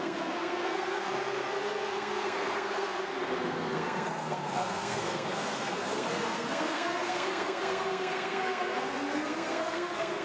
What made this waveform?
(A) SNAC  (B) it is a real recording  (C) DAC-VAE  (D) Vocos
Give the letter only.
A